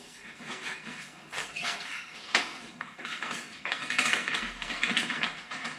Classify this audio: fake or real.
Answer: fake